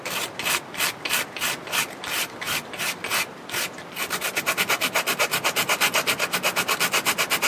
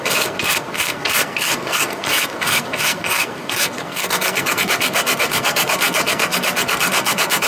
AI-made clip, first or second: second